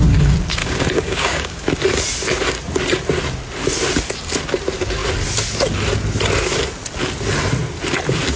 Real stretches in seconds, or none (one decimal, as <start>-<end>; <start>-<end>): 0.0-0.6; 1.7-8.4